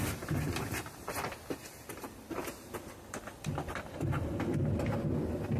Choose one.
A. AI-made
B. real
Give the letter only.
B